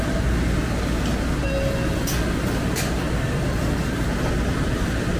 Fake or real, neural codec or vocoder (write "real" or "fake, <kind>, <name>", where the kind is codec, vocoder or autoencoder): real